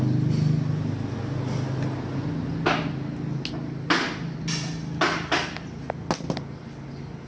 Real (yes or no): yes